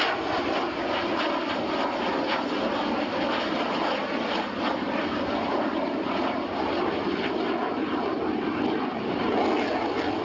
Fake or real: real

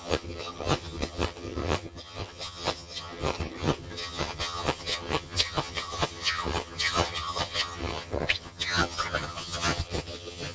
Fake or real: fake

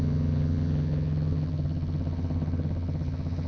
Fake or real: fake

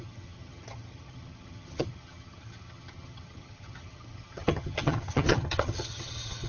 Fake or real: fake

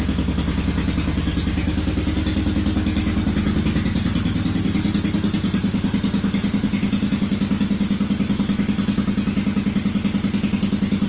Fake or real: real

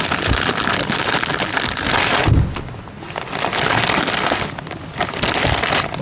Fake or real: real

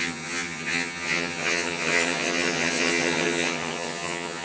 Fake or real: fake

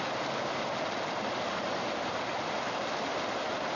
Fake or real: real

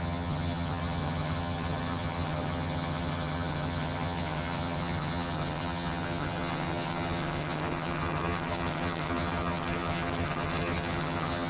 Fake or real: fake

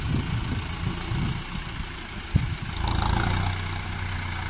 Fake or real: real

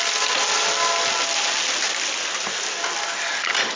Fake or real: real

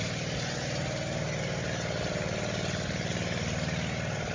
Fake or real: real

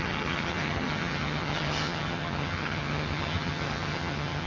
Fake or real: fake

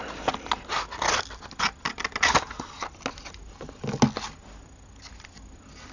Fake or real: real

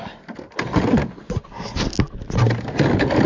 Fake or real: real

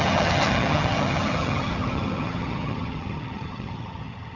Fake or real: fake